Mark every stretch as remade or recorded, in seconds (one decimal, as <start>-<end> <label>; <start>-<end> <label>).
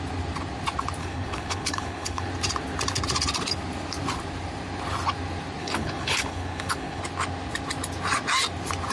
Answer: 0.0-1.0 recorded; 1.0-2.3 remade; 2.3-5.6 recorded; 5.6-7.0 remade; 7.0-8.9 recorded